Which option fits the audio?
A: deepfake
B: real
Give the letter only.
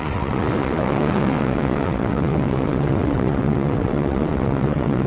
A